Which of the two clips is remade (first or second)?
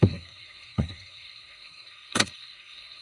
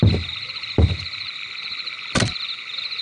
first